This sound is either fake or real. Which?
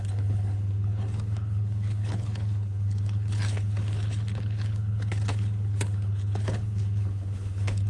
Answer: fake